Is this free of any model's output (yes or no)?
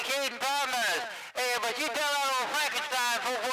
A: yes